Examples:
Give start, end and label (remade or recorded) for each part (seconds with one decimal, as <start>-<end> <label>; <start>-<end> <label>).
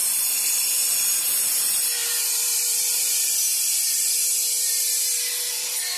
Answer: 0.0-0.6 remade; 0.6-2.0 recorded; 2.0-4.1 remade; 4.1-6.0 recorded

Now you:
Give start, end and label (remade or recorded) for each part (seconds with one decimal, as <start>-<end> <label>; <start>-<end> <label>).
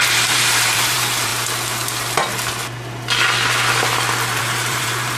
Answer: 0.0-1.3 remade; 1.3-4.4 recorded; 4.4-5.2 remade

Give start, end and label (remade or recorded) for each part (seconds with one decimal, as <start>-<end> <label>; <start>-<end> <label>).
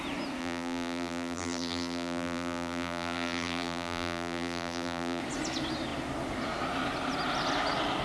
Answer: 0.0-0.4 recorded; 0.4-5.2 remade; 5.2-8.0 recorded